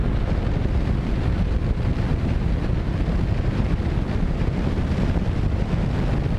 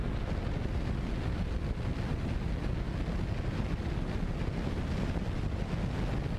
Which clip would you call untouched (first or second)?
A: second